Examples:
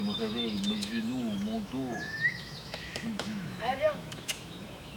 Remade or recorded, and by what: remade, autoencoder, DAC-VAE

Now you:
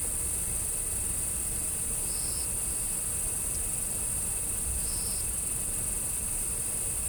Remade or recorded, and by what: recorded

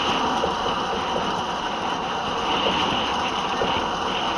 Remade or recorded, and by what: recorded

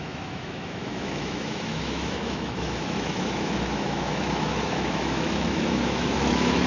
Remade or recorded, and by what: remade, autoencoder, DAC-VAE